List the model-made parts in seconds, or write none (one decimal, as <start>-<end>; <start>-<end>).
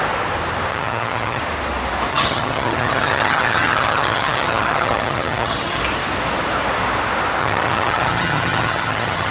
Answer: 0.7-1.4; 2.1-5.8; 7.4-9.3